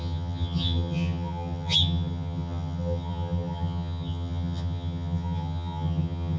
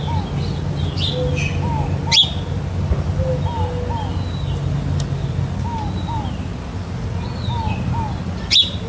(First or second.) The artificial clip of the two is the first